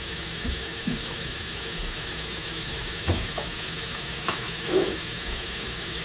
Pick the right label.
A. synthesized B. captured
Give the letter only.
A